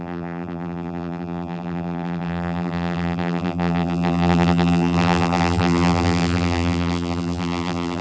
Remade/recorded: remade